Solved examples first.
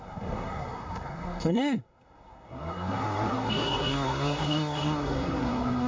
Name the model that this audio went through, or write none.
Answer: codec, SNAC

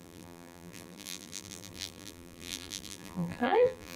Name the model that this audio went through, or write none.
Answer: vocoder, BigVGAN v2